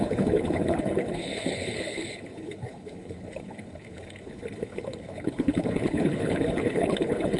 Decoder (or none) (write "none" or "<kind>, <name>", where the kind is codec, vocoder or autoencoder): codec, HILCodec